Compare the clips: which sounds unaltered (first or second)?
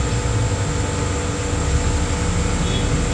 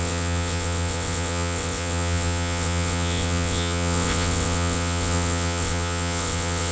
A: first